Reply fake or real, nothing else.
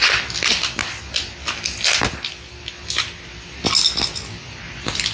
real